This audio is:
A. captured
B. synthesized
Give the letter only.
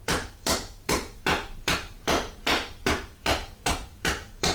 B